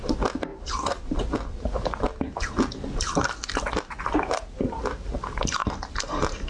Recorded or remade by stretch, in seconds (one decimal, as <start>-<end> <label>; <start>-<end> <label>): 0.0-0.5 recorded; 0.5-1.2 remade; 1.2-6.5 recorded